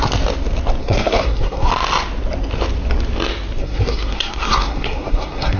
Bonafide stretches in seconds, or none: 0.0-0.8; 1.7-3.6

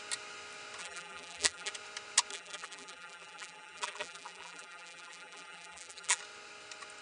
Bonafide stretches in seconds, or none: 0.0-0.8; 1.7-2.3; 6.2-7.0

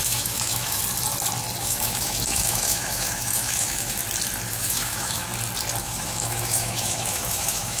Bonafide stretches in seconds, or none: 0.8-1.6; 4.0-4.5; 5.3-5.8